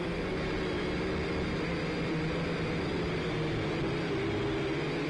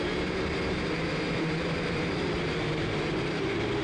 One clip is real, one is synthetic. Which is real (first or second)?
first